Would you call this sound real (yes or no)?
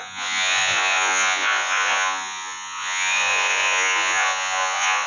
no